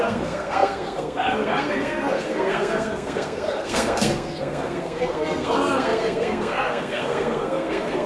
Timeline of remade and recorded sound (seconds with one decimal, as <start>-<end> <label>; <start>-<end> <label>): 0.0-8.1 remade